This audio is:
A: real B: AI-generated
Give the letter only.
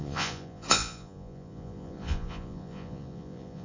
B